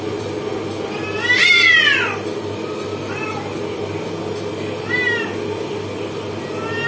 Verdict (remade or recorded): recorded